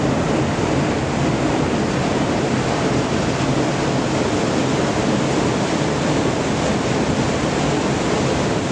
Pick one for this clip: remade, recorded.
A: recorded